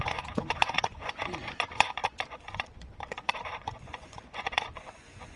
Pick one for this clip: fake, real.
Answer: fake